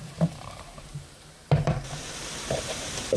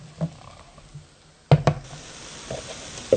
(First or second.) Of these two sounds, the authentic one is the second